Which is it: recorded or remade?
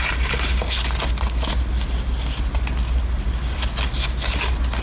recorded